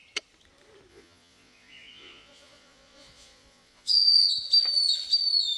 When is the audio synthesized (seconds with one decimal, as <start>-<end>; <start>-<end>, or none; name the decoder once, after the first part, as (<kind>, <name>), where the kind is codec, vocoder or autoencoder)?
0.9-4.3 (vocoder, Vocos)